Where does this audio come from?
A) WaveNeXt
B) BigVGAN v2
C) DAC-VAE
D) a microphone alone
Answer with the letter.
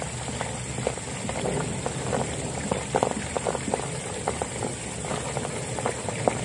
D